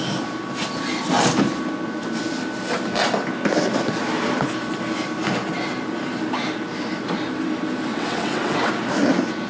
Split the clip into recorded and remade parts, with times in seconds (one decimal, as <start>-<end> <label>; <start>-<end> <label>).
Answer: 0.0-7.9 recorded; 7.9-8.7 remade; 8.7-9.5 recorded